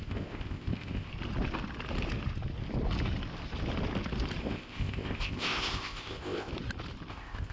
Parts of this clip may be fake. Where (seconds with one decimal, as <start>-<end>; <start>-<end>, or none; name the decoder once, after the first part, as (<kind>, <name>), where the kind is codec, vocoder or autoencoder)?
0.0-1.1 (codec, ZipCodec); 4.4-6.5; 7.1-7.5